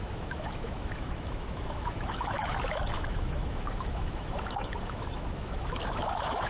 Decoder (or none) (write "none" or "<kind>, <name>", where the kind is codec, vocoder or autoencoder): autoencoder, DAC-VAE